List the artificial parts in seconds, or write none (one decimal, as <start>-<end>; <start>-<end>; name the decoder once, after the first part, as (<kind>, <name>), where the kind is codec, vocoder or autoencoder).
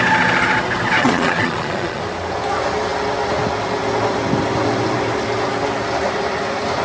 1.0-2.0 (vocoder, Vocos)